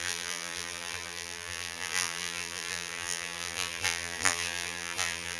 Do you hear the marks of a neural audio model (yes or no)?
yes